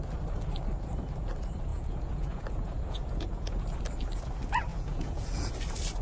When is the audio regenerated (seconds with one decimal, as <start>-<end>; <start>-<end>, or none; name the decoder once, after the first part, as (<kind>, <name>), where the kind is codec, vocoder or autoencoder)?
1.7-3.6 (vocoder, Vocos); 4.7-5.5